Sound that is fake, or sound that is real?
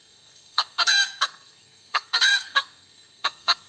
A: fake